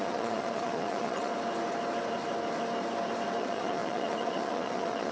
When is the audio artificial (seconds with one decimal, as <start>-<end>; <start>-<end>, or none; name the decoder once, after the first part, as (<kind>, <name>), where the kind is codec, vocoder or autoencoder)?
0.0-1.3 (vocoder, Vocos); 3.4-5.1